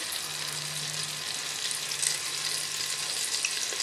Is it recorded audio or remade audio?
recorded